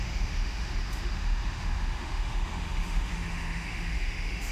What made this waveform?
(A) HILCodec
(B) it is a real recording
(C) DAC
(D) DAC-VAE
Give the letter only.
D